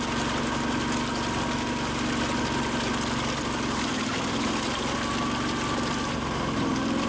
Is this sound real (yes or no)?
yes